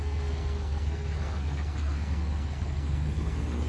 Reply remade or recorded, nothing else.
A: remade